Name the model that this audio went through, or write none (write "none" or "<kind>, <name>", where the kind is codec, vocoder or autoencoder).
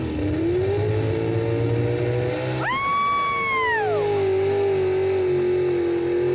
none